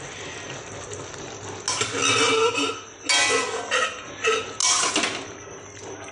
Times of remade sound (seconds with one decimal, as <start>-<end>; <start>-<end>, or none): none